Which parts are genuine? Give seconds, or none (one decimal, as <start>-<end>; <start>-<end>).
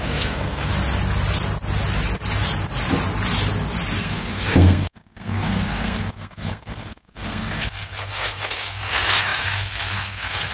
0.7-4.0